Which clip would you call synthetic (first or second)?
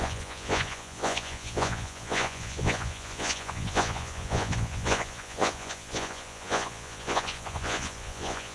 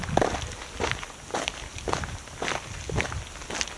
first